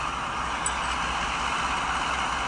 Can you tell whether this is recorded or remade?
recorded